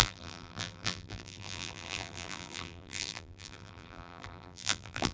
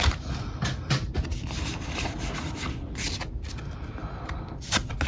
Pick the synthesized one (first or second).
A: first